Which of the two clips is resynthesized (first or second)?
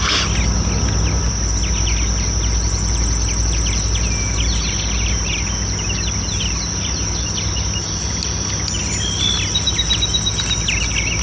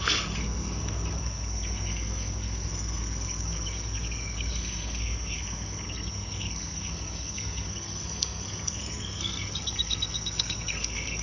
second